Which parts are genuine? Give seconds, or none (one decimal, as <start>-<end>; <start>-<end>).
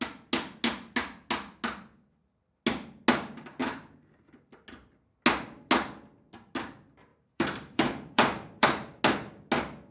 0.0-7.1; 9.0-9.9